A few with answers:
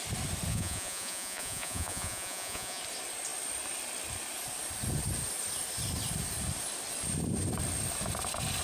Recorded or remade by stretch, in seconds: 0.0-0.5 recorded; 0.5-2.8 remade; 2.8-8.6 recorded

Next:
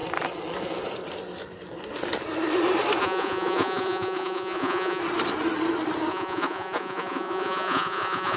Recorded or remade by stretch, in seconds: 0.0-3.0 recorded; 3.0-5.0 remade; 5.0-6.1 recorded; 6.1-8.4 remade

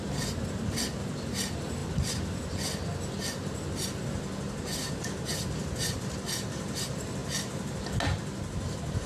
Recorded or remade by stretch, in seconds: 0.0-9.1 recorded